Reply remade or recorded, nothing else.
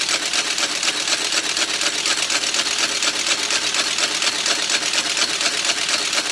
recorded